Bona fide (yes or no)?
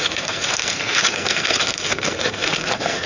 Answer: no